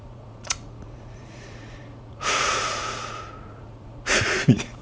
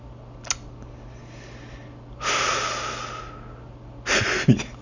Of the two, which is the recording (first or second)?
second